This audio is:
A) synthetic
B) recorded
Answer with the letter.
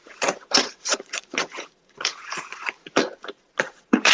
A